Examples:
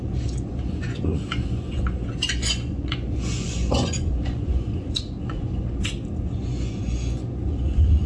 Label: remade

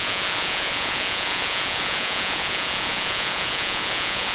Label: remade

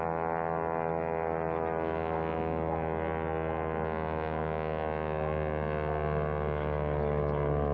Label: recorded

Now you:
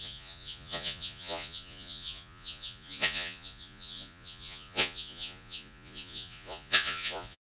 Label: remade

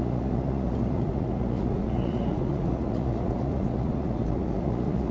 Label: remade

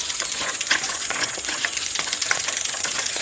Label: remade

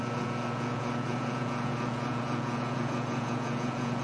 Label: remade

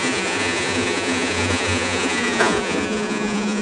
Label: remade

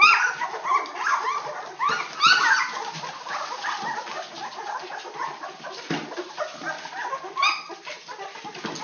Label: recorded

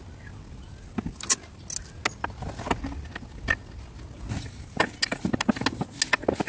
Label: recorded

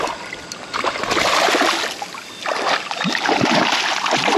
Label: recorded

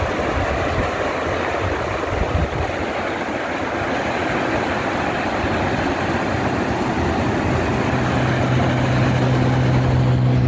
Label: recorded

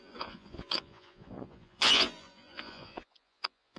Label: remade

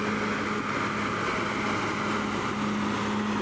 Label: recorded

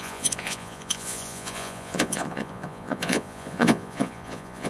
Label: remade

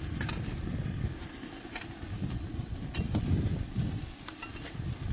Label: recorded